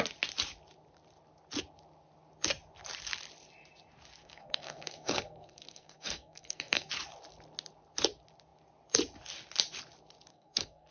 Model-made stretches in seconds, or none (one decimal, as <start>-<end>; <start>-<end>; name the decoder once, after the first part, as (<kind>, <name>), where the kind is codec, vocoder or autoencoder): 4.2-6.9 (codec, SNAC); 10.3-10.9